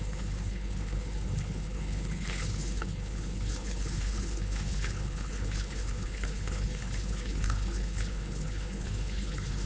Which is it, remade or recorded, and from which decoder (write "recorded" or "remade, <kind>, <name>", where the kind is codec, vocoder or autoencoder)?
remade, codec, HILCodec